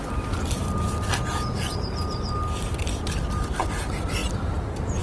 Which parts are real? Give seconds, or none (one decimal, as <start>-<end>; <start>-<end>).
0.0-5.0